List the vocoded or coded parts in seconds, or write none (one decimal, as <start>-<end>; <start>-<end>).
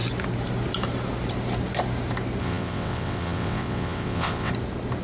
2.4-4.5